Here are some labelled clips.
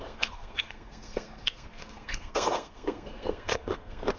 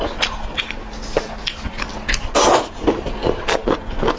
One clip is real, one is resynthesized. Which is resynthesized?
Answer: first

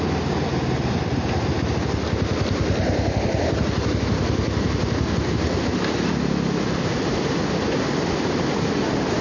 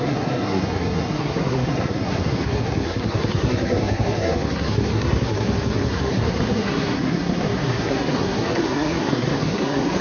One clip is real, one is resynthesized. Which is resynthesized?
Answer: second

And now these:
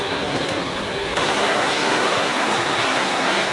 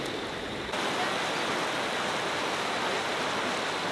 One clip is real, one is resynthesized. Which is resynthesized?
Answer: first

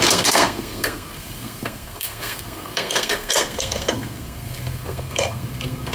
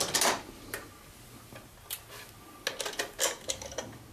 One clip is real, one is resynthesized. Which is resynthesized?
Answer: first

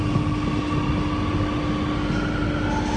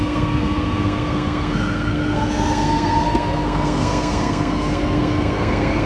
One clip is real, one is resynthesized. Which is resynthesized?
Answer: second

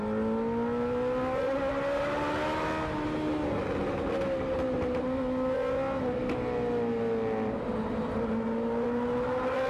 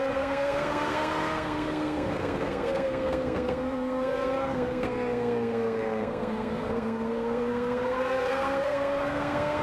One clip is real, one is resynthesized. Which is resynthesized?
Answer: second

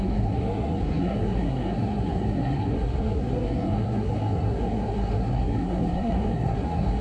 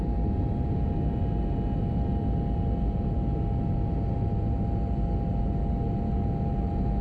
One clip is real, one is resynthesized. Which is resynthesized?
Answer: first